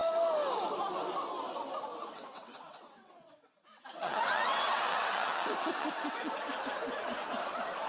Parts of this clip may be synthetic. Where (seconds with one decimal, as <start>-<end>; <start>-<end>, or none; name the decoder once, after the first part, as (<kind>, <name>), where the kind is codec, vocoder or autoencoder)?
2.0-6.3 (vocoder, WaveNeXt)